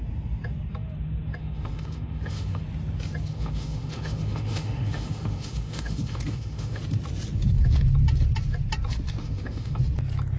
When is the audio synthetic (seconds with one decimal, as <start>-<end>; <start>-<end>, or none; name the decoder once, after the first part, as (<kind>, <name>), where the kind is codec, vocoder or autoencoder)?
1.4-2.6 (autoencoder, DAC-VAE); 3.3-6.8; 9.2-9.8